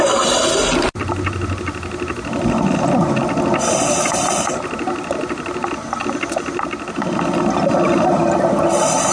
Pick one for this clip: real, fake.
fake